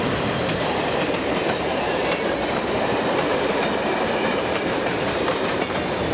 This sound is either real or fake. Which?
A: fake